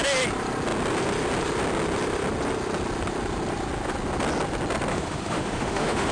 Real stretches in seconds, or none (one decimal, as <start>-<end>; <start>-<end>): 0.0-4.9